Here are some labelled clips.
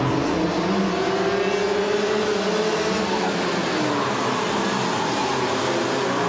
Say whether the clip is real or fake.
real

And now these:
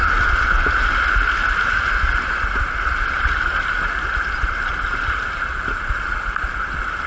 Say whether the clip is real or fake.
real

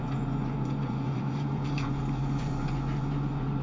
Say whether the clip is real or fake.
fake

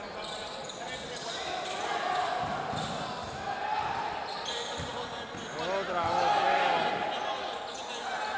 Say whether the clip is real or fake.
real